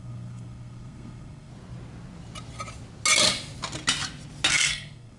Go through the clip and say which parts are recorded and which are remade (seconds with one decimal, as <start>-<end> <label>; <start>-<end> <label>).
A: 0.0-1.5 remade; 1.5-4.5 recorded; 4.5-5.2 remade